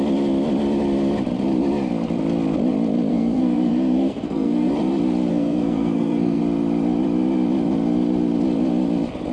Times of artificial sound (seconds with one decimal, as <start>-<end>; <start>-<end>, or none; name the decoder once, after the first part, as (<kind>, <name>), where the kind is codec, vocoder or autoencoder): 3.1-4.7 (codec, SNAC); 5.3-6.4